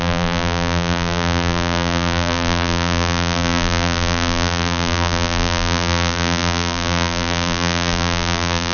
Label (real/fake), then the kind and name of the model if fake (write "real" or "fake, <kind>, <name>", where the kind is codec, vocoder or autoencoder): fake, vocoder, BigVGAN v2